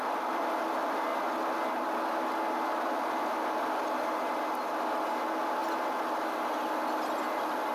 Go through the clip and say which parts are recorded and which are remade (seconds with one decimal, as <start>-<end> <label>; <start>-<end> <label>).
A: 0.0-7.7 recorded

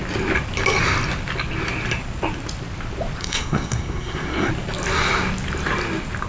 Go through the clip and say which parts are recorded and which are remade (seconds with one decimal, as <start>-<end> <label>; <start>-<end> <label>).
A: 0.0-3.2 recorded; 3.2-4.5 remade; 4.5-6.3 recorded

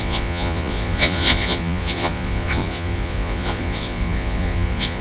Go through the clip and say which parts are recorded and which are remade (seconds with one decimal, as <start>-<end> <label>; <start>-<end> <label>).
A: 0.0-5.0 remade

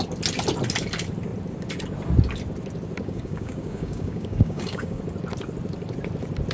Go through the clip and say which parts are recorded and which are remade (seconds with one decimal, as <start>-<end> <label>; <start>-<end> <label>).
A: 0.0-3.0 recorded; 3.0-5.0 remade; 5.0-6.5 recorded